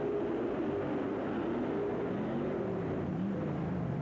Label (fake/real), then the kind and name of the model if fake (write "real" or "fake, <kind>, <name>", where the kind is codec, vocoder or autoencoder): real